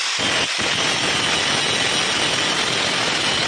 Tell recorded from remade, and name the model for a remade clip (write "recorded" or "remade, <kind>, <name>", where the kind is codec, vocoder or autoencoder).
recorded